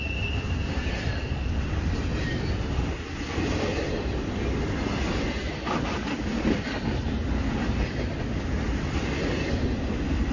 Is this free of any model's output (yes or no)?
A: yes